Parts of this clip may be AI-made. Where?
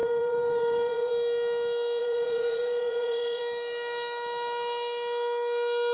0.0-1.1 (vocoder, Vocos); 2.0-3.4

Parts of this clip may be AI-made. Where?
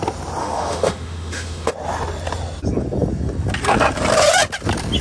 0.4-1.7 (autoencoder, DAC-VAE)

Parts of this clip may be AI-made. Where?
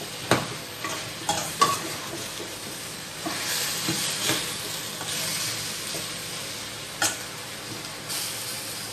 1.4-3.5 (vocoder, BigVGAN v2)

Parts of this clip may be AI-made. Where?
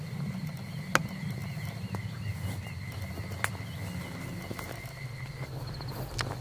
none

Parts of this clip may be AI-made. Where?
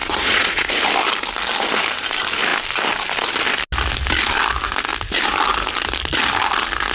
0.0-0.7 (vocoder, WaveNeXt)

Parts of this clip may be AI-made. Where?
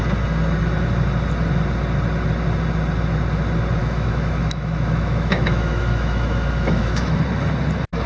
3.8-7.2 (autoencoder, DAC-VAE)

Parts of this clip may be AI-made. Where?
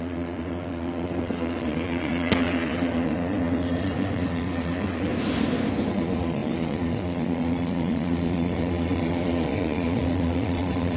0.0-5.1 (vocoder, Vocos); 5.9-11.0